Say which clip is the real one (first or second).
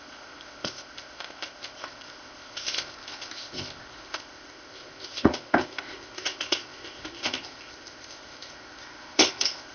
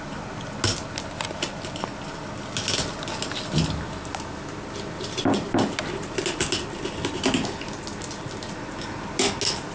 second